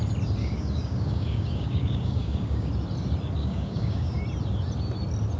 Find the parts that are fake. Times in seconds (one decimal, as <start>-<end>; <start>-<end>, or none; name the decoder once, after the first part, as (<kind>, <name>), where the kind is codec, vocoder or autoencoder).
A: 0.4-2.7 (codec, DAC); 3.4-4.2